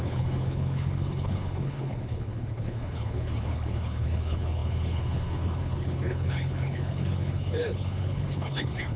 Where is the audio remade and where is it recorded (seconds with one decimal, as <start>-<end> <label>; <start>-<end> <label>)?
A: 0.0-9.0 remade